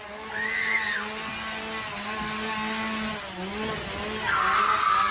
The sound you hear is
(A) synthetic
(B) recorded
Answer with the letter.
B